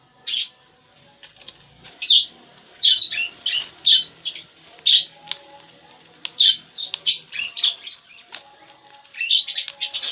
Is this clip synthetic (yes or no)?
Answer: no